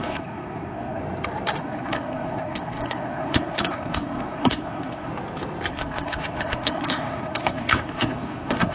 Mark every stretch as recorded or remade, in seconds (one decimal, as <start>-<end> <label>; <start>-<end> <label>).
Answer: 0.0-1.0 remade; 1.0-1.6 recorded; 1.6-5.1 remade; 5.1-5.7 recorded; 5.7-8.7 remade